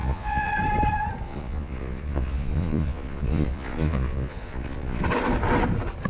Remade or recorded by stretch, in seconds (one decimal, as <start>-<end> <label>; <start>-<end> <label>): 0.0-0.5 remade; 0.5-1.3 recorded; 1.3-5.0 remade; 5.0-6.1 recorded